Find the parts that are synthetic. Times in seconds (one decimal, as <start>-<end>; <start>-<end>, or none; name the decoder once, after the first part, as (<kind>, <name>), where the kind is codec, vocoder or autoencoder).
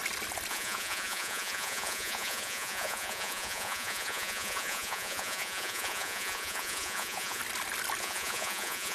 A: 0.5-7.4 (vocoder, Vocos); 8.0-8.9